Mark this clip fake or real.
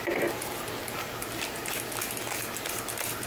real